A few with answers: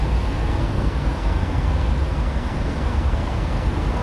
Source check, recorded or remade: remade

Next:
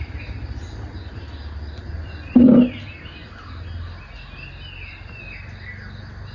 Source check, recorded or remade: recorded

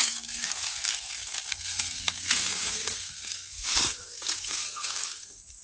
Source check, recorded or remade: remade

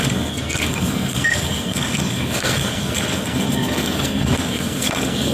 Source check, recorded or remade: remade